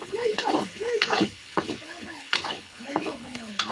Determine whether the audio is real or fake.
fake